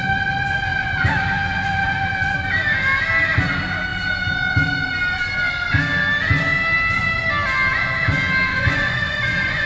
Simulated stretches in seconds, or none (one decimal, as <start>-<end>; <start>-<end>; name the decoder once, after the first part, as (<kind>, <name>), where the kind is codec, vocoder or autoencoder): 8.5-9.7 (vocoder, Vocos)